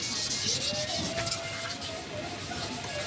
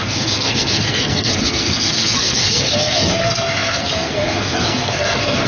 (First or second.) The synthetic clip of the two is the second